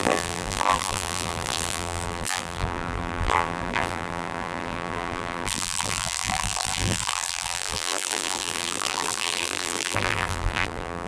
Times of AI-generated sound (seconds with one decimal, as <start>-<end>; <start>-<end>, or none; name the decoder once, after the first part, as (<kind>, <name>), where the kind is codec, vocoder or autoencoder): 0.0-11.1 (vocoder, BigVGAN v2)

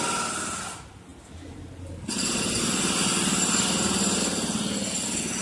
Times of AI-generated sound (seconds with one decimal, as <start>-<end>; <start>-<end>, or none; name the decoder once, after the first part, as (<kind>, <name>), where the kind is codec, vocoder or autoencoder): none

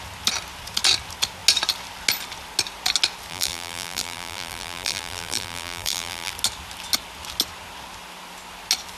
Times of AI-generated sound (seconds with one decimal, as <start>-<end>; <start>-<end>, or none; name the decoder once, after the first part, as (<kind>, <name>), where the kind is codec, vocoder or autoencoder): 3.3-6.3 (vocoder, BigVGAN v2)

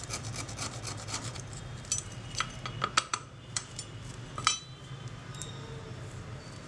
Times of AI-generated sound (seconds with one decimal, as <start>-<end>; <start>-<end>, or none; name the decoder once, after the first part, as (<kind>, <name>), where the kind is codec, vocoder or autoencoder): 3.1-4.6 (vocoder, BigVGAN v2)

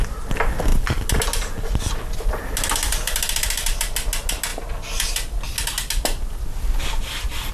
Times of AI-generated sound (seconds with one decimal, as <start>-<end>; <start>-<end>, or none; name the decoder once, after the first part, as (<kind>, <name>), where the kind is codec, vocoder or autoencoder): none